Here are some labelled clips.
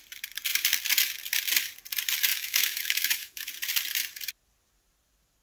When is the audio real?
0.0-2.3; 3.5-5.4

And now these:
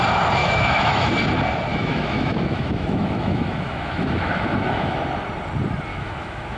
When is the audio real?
0.0-0.4; 1.1-1.7; 5.0-5.9

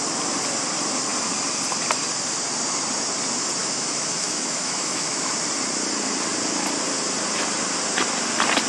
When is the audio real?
0.0-3.6; 5.3-8.7

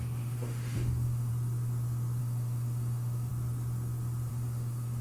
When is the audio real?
1.3-2.2; 3.3-4.3

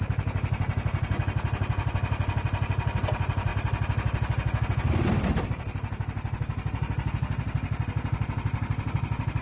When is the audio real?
0.0-9.4

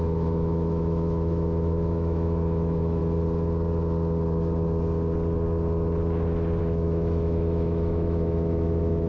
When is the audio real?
3.0-6.6

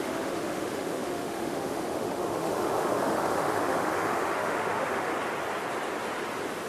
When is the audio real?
5.1-6.7